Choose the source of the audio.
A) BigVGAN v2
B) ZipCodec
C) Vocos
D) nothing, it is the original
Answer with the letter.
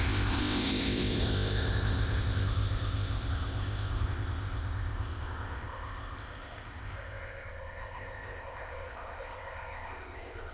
B